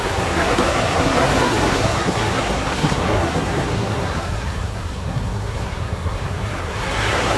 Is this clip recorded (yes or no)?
no